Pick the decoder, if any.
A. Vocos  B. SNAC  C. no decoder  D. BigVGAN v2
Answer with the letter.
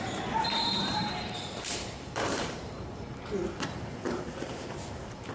D